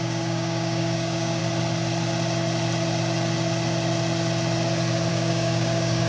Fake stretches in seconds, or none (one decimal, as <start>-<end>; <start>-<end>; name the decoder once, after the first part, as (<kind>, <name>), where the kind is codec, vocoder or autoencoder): 0.0-1.4 (codec, DAC); 5.1-6.1